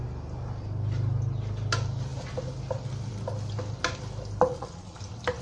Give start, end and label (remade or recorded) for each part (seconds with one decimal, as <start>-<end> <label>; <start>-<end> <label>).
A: 0.0-4.5 recorded; 4.5-5.0 remade; 5.0-5.4 recorded